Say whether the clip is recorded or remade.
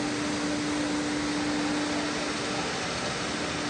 recorded